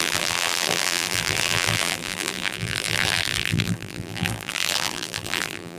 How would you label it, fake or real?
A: fake